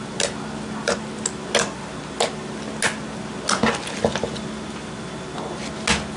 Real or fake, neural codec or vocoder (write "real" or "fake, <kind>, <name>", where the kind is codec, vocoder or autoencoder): real